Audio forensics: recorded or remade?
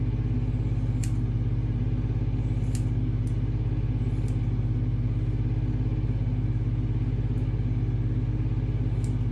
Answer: recorded